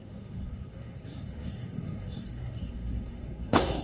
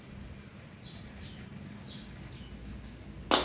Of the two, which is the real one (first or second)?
second